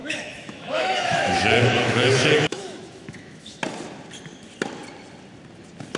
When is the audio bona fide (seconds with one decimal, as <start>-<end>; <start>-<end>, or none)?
3.6-6.0